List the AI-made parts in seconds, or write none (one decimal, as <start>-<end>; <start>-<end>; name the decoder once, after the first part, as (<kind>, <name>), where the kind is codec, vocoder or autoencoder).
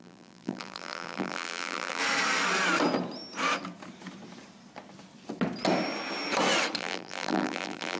0.0-2.0 (vocoder, BigVGAN v2); 6.8-8.0